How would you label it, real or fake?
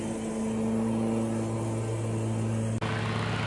real